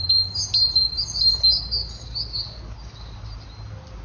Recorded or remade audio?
recorded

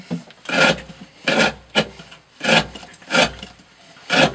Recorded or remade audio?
recorded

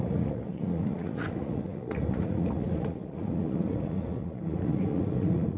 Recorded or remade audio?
remade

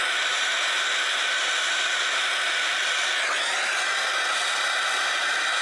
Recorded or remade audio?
recorded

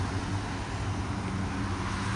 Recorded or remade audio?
recorded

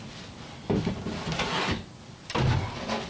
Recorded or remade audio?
recorded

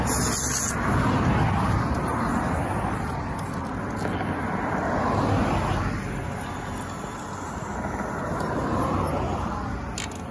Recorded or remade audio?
recorded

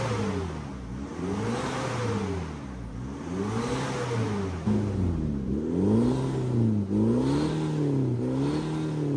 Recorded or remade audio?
recorded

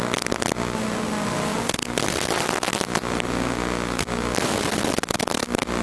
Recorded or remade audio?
recorded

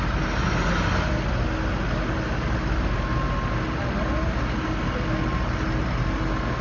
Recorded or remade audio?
recorded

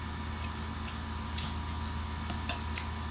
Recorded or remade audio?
recorded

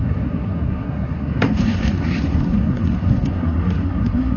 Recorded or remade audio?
remade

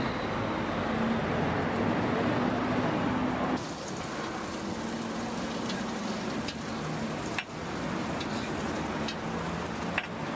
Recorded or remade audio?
recorded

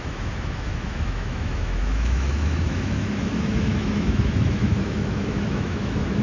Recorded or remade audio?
remade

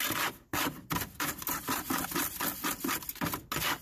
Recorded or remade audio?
recorded